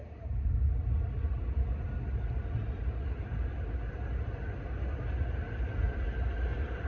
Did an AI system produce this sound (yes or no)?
no